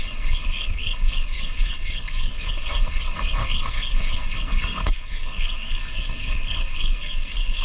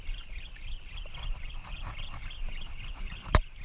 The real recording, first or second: second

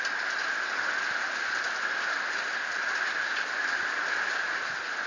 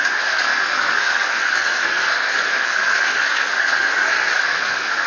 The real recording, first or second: first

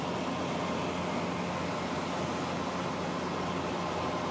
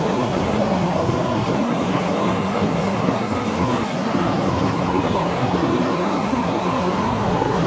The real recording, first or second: first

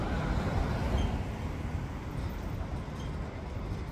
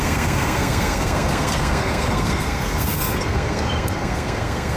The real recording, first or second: first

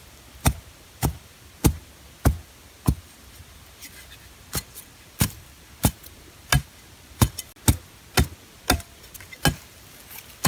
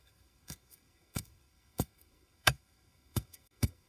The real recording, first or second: first